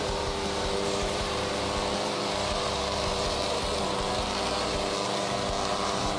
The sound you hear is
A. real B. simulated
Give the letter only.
B